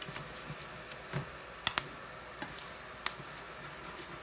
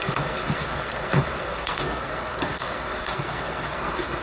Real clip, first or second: first